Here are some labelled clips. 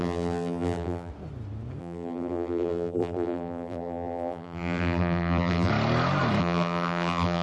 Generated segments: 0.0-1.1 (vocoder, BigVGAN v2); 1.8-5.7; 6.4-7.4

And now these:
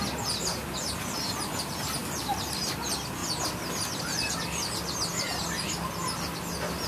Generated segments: none

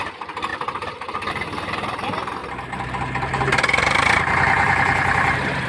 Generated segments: 0.0-2.4 (vocoder, BigVGAN v2); 3.3-5.7

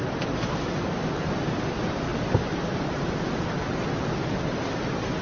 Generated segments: 0.0-2.1 (vocoder, BigVGAN v2)